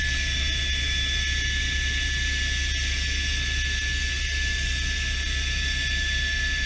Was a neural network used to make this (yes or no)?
no